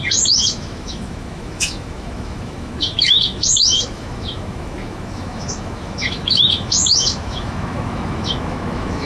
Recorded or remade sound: remade